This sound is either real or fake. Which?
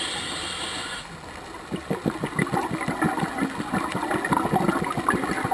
real